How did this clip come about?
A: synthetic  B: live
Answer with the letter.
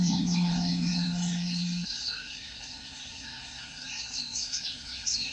A